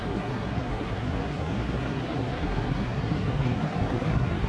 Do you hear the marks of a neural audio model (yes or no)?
yes